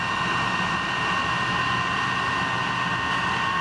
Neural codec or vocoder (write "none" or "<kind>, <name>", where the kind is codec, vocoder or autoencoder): none